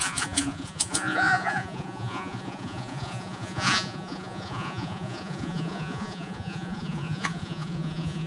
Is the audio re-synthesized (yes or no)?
yes